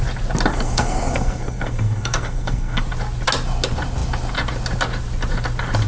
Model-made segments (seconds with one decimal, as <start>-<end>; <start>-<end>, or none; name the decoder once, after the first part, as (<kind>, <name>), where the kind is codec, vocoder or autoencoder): 0.5-2.8 (codec, SNAC)